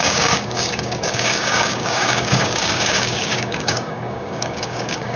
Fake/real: fake